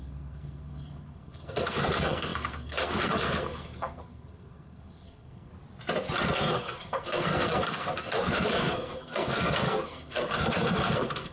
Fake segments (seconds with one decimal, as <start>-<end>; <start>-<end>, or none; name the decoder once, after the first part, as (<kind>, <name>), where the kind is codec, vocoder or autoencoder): 0.0-5.5 (codec, SNAC); 6.3-11.3